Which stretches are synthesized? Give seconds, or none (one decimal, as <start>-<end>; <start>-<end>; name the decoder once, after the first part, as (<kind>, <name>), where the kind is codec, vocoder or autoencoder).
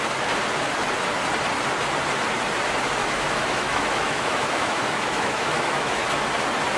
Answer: 3.0-6.0 (autoencoder, DAC-VAE)